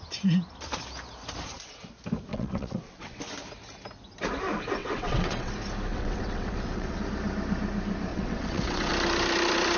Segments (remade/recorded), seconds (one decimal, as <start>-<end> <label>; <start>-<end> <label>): 0.0-2.3 recorded; 2.3-3.2 remade; 3.2-4.8 recorded; 4.8-5.5 remade; 5.5-5.9 recorded; 5.9-7.0 remade; 7.0-8.1 recorded; 8.1-8.9 remade; 8.9-9.8 recorded